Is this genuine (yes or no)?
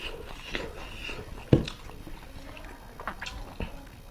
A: yes